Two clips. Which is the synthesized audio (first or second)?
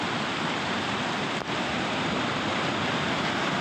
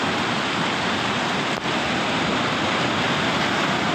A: first